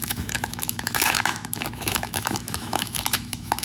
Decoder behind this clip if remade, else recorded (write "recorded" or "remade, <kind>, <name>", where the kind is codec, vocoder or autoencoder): remade, autoencoder, DAC-VAE